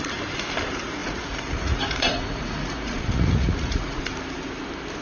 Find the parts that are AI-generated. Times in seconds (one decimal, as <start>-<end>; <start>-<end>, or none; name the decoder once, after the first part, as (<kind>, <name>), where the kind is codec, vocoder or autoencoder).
1.0-4.0 (vocoder, Vocos)